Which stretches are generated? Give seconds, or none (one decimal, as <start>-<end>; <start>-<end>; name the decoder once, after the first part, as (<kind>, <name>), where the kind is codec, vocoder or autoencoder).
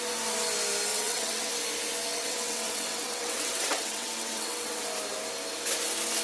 0.9-1.5 (vocoder, WaveNeXt); 2.1-4.8